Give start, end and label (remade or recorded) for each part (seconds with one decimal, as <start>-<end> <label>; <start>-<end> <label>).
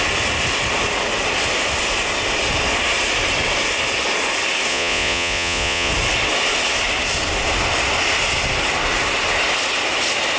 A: 0.0-4.7 recorded; 4.7-5.9 remade; 5.9-10.4 recorded